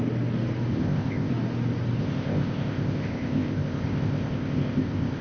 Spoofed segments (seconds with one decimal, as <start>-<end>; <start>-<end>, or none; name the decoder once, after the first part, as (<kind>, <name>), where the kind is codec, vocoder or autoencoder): 0.7-1.3 (codec, ZipCodec); 2.0-5.2